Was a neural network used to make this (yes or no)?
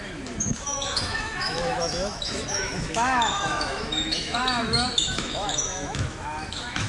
yes